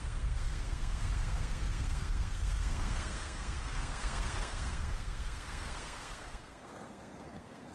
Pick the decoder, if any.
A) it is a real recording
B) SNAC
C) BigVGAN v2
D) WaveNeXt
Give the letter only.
B